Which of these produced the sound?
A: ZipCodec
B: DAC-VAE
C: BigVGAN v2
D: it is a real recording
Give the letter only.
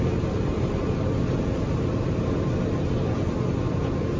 D